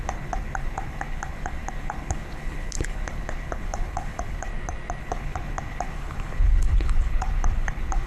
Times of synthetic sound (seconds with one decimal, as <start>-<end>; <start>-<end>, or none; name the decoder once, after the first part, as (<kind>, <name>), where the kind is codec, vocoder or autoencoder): 0.0-4.5 (codec, HILCodec); 5.0-8.1